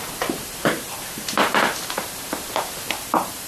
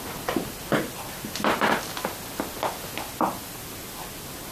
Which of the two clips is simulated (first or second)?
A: first